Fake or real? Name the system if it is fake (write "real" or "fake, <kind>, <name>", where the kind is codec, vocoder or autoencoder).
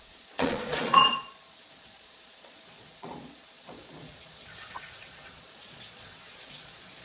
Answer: fake, vocoder, Vocos